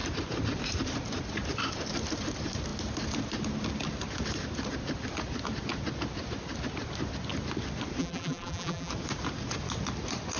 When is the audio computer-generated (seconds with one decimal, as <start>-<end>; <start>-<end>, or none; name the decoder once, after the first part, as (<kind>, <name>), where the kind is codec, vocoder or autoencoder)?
8.0-8.9 (vocoder, BigVGAN v2)

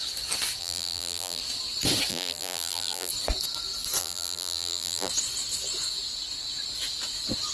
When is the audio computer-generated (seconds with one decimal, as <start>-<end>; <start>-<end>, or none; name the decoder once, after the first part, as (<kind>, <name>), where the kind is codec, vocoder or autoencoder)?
0.6-1.4 (vocoder, BigVGAN v2); 2.1-3.1; 4.0-5.1

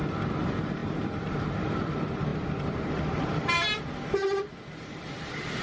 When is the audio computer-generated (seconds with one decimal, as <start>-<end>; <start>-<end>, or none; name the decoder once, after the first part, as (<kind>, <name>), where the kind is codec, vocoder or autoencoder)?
0.0-5.6 (vocoder, BigVGAN v2)

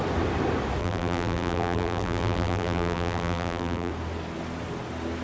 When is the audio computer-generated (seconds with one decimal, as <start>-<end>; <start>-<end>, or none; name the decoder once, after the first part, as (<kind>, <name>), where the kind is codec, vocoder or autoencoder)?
0.8-3.9 (vocoder, BigVGAN v2)

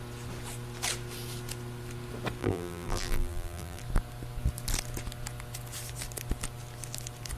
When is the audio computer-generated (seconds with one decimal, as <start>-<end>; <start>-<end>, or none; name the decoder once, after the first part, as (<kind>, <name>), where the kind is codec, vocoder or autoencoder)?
2.4-3.8 (vocoder, BigVGAN v2)

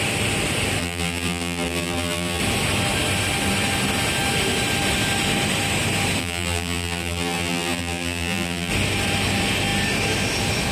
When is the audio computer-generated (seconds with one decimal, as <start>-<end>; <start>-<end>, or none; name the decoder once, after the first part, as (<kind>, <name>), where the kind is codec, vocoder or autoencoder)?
0.8-2.4 (vocoder, BigVGAN v2); 6.2-8.7

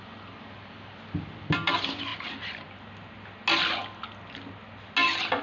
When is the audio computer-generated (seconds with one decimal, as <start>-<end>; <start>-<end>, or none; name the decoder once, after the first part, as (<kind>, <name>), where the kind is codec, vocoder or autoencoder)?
2.1-2.8 (vocoder, BigVGAN v2)

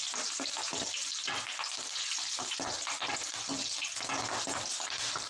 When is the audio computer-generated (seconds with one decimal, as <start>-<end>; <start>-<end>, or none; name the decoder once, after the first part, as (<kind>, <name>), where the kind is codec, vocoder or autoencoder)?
none